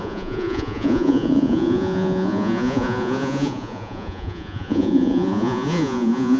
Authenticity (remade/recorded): remade